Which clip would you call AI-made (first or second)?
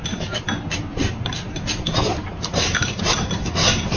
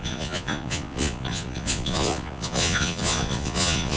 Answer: second